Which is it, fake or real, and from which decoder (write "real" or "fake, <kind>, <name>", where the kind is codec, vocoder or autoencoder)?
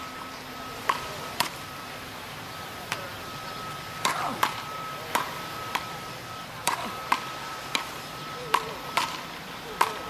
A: fake, vocoder, BigVGAN v2